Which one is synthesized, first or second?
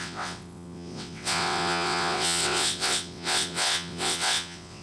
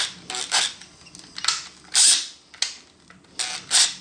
first